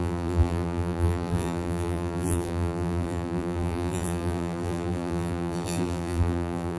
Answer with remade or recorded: remade